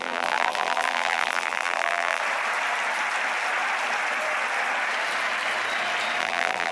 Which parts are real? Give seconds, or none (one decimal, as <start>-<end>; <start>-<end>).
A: 2.2-6.2